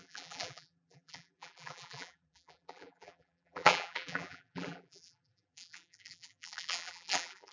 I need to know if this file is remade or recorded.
remade